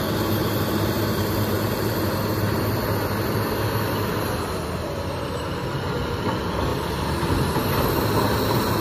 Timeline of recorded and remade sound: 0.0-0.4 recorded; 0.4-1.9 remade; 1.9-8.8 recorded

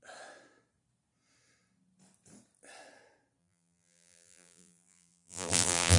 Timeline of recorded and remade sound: 0.0-3.4 recorded; 3.4-6.0 remade

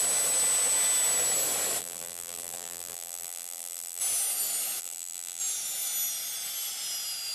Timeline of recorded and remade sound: 0.0-1.8 recorded; 1.8-4.0 remade; 4.0-4.8 recorded; 4.8-5.4 remade; 5.4-7.3 recorded

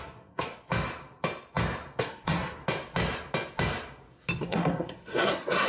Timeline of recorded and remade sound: 0.0-0.7 remade; 0.7-2.0 recorded; 2.0-2.6 remade; 2.6-4.4 recorded; 4.4-5.7 remade

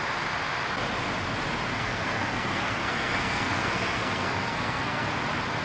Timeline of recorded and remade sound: 0.0-1.7 recorded; 1.7-5.1 remade; 5.1-5.6 recorded

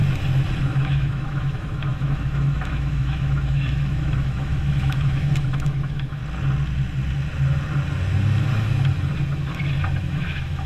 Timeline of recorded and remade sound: 0.0-0.7 recorded; 0.7-6.2 remade; 6.2-10.0 recorded; 10.0-10.7 remade

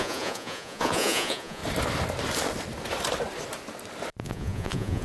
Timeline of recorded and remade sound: 0.0-1.6 remade; 1.6-4.2 recorded; 4.2-5.0 remade

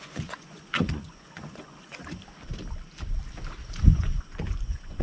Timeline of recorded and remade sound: 0.0-2.0 remade; 2.0-3.8 recorded; 3.8-5.0 remade